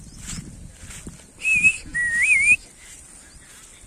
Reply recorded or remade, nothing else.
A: recorded